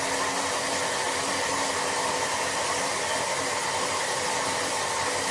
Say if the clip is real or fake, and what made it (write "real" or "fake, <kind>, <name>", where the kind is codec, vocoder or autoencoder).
real